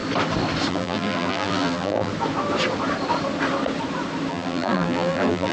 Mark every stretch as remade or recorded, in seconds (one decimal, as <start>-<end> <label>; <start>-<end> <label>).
0.0-0.7 recorded; 0.7-2.1 remade; 2.1-4.3 recorded; 4.3-5.5 remade

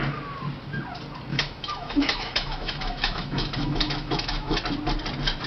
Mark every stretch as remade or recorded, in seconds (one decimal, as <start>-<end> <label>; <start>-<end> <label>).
0.0-1.3 recorded; 1.3-4.6 remade; 4.6-5.5 recorded

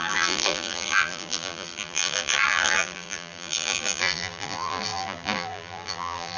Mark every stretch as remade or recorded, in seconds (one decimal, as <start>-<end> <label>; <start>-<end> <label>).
0.0-6.4 remade